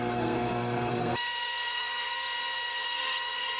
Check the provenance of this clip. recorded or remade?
remade